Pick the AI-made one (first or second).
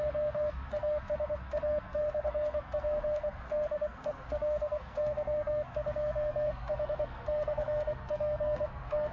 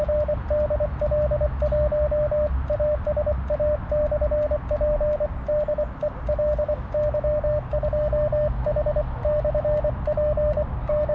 first